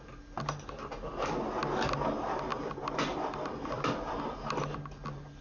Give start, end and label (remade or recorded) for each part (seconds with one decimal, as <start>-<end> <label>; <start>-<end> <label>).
0.0-2.5 recorded; 2.5-3.9 remade; 3.9-5.4 recorded